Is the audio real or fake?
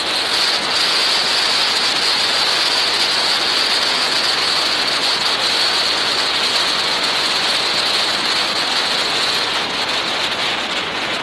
fake